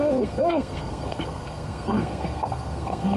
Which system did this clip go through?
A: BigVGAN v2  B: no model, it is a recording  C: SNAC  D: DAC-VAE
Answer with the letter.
C